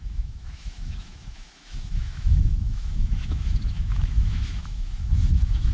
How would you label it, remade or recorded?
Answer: remade